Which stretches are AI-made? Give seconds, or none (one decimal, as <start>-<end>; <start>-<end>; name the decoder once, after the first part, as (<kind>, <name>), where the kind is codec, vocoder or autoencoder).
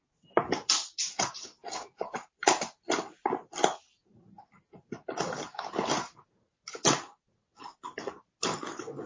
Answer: 1.6-2.8 (vocoder, BigVGAN v2)